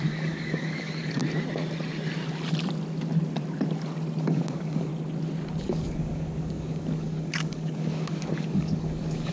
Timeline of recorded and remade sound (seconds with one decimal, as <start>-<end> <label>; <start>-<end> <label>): 0.0-1.2 remade; 1.2-4.2 recorded; 4.2-4.9 remade; 4.9-5.6 recorded; 5.6-9.3 remade